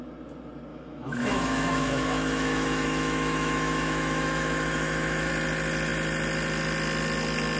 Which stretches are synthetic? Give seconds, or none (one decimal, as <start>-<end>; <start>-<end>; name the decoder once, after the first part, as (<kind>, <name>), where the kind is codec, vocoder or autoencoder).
0.7-5.3 (autoencoder, DAC-VAE)